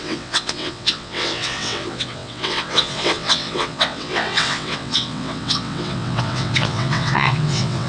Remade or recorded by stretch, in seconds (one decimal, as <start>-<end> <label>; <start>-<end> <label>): 0.0-7.9 remade

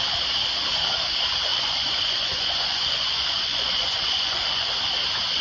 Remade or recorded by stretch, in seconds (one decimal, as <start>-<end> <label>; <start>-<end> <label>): 0.0-1.5 recorded; 1.5-4.7 remade; 4.7-5.4 recorded

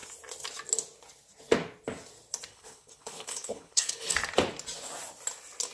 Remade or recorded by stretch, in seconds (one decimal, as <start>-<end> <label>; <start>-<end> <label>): 0.0-2.5 recorded; 2.5-4.1 remade; 4.1-5.7 recorded

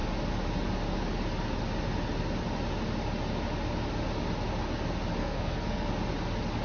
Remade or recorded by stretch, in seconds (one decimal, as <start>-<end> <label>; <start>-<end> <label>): 0.0-5.2 recorded; 5.2-5.9 remade; 5.9-6.6 recorded

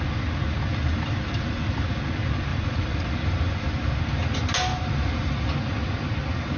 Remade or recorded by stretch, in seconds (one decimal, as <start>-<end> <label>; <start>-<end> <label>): 0.0-0.7 recorded; 0.7-2.0 remade; 2.0-2.5 recorded; 2.5-4.0 remade; 4.0-4.7 recorded; 4.7-5.3 remade; 5.3-6.6 recorded

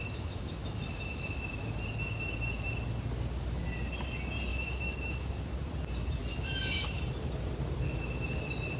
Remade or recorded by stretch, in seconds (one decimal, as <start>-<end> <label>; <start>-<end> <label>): 0.0-1.4 remade; 1.4-4.5 recorded; 4.5-5.5 remade; 5.5-6.2 recorded; 6.2-7.0 remade; 7.0-8.8 recorded